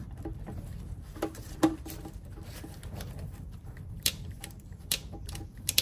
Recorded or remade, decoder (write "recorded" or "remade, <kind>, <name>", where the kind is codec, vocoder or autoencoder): remade, vocoder, BigVGAN v2